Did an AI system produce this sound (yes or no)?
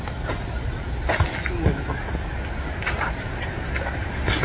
no